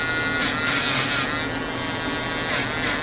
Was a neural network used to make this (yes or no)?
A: no